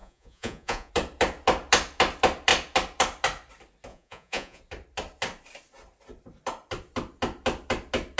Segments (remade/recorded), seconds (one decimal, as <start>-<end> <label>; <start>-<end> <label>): 0.0-0.9 remade; 0.9-3.9 recorded; 3.9-4.6 remade; 4.6-8.2 recorded